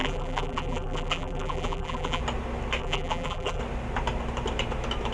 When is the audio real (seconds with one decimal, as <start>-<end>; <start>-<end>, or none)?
2.2-2.8; 3.6-5.1